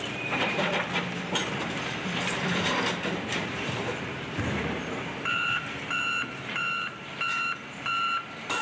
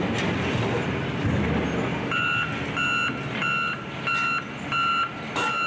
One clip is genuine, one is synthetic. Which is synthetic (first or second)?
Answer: first